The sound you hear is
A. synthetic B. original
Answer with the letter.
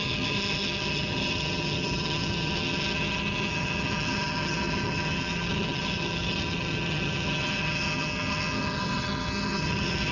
A